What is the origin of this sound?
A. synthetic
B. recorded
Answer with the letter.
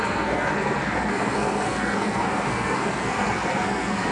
A